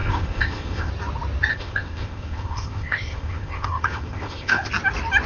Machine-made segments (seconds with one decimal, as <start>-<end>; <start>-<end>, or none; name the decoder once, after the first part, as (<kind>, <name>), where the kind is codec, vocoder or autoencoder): 0.0-0.9 (codec, ZipCodec); 1.5-4.7

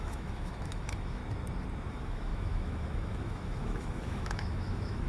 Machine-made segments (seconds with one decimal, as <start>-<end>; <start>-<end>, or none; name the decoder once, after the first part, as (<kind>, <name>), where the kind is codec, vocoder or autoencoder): 0.0-1.2 (autoencoder, DAC-VAE); 1.9-5.1

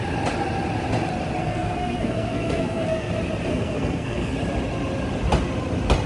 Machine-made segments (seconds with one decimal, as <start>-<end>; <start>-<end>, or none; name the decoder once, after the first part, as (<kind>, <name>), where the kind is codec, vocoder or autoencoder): 1.4-3.1 (codec, SNAC); 3.5-4.3

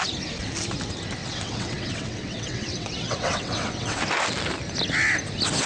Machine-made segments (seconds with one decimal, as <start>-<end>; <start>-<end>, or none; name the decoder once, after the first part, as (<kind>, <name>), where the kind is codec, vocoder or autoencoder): 1.2-4.0 (vocoder, WaveNeXt)

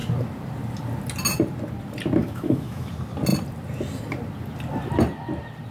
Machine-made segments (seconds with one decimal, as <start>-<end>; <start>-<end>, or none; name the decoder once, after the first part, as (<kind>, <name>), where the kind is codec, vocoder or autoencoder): 2.2-2.9 (autoencoder, DAC-VAE)

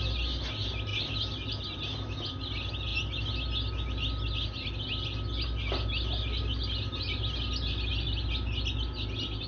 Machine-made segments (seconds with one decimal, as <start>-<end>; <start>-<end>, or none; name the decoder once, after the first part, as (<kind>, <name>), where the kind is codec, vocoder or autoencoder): none

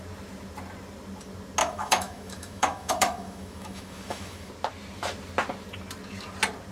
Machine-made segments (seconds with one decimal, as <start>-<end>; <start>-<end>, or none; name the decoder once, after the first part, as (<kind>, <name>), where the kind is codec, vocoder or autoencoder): 1.6-4.5 (autoencoder, DAC-VAE)